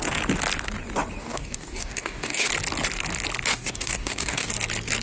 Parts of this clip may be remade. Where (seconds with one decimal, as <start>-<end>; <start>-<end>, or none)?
1.2-2.5; 3.5-4.5